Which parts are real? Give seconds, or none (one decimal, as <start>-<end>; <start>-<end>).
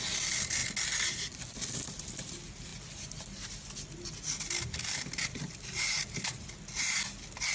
0.0-7.5